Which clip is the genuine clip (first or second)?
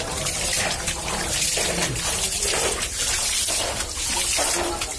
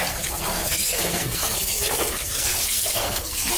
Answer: first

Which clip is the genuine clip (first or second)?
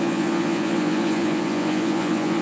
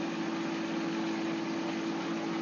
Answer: second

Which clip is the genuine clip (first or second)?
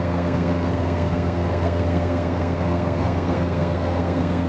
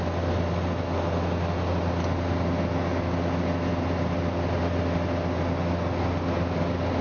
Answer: second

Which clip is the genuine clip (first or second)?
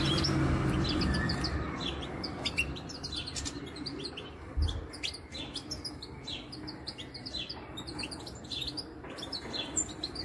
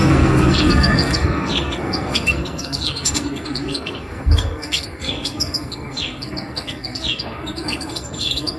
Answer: first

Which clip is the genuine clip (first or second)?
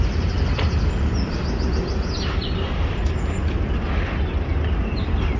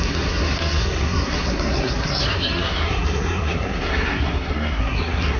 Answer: first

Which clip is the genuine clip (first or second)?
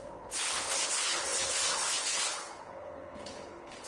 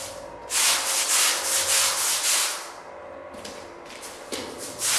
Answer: second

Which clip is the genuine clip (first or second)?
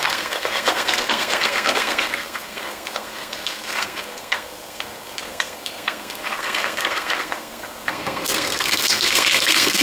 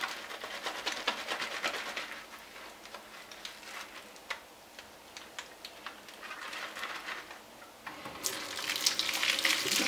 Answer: second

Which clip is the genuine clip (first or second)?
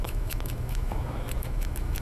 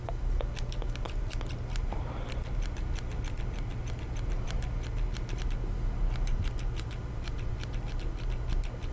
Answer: second